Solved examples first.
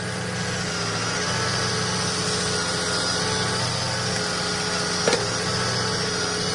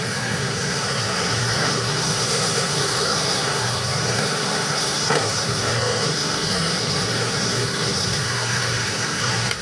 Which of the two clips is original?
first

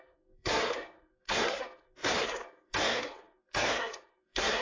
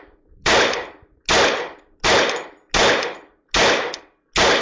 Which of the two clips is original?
second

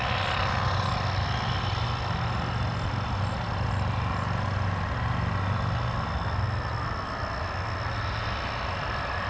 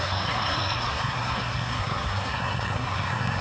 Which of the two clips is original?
first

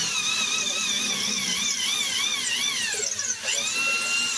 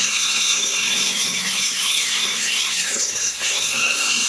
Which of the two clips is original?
first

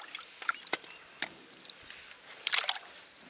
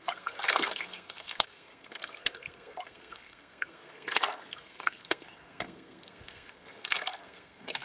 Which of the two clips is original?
first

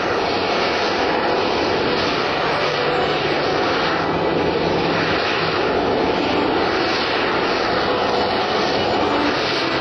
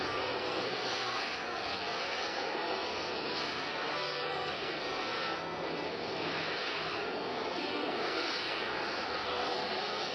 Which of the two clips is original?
first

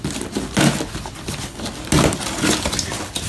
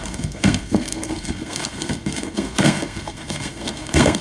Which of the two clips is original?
first